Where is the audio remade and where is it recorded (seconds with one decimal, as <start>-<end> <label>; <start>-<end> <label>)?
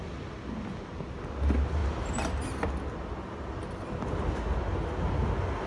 0.0-5.7 recorded